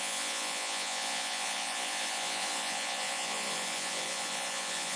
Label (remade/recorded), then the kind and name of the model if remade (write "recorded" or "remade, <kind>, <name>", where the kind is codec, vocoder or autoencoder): remade, vocoder, Vocos